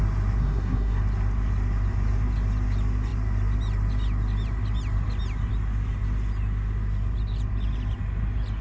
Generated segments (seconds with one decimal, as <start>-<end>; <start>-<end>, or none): 0.4-1.0